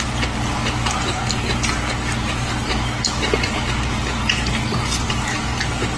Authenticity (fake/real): real